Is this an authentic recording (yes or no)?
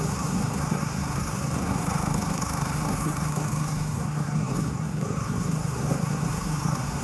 no